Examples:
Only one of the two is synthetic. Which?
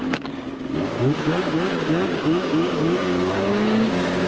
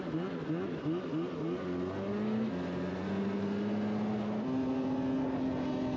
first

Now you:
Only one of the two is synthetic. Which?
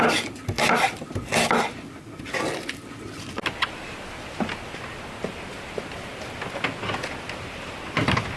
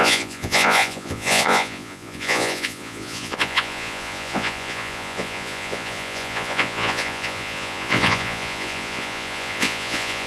second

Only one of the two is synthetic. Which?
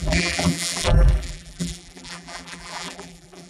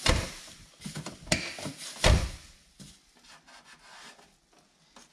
first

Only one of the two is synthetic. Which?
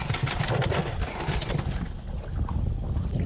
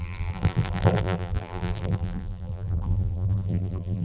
second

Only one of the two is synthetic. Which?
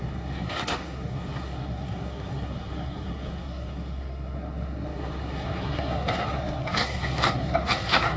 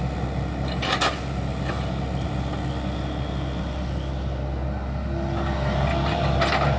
first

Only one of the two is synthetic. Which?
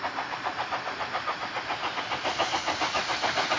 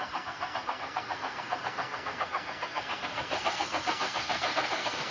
second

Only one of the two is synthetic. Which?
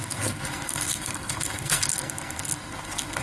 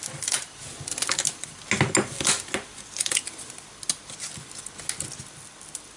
first